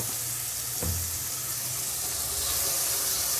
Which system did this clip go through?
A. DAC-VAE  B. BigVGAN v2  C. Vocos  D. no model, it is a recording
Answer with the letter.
D